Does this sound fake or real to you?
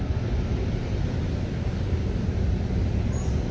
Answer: real